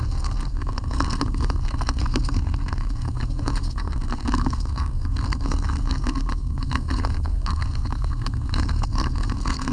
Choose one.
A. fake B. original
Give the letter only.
A